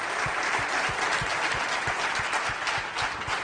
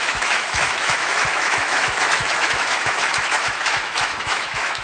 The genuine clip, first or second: first